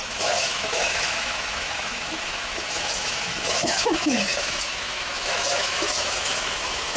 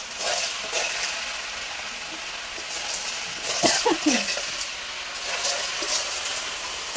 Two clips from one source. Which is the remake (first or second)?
first